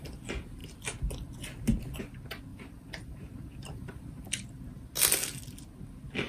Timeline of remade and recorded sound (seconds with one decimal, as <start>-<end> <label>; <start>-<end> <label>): 0.0-2.5 recorded; 2.5-4.0 remade; 4.0-6.3 recorded